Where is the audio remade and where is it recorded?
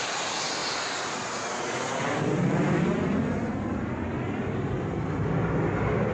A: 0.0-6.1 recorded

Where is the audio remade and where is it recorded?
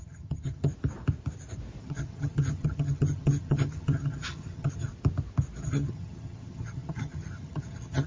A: 0.0-0.7 remade; 0.7-1.8 recorded; 1.8-4.9 remade; 4.9-5.6 recorded; 5.6-8.1 remade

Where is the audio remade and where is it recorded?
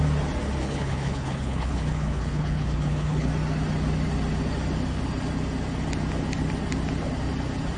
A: 0.0-0.6 recorded; 0.6-3.3 remade; 3.3-7.8 recorded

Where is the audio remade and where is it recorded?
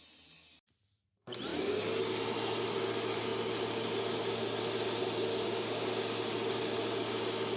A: 0.0-5.3 recorded; 5.3-6.6 remade; 6.6-7.6 recorded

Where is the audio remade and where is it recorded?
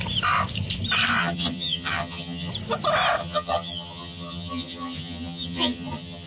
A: 0.0-1.2 recorded; 1.2-2.5 remade; 2.5-3.2 recorded; 3.2-6.3 remade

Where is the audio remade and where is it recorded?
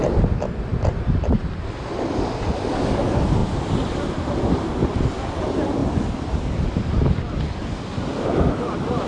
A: 0.0-3.4 recorded; 3.4-4.5 remade; 4.5-5.8 recorded; 5.8-6.3 remade; 6.3-9.1 recorded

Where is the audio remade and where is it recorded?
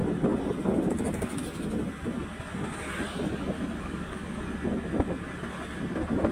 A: 0.0-3.8 recorded; 3.8-4.4 remade; 4.4-6.3 recorded